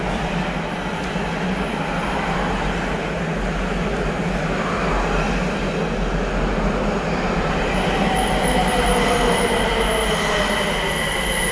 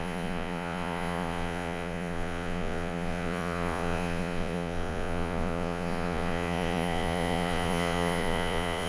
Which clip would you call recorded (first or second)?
first